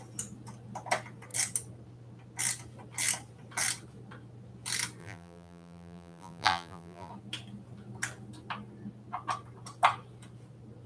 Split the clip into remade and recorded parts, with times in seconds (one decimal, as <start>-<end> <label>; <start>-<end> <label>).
0.0-5.0 recorded; 5.0-7.1 remade; 7.1-10.9 recorded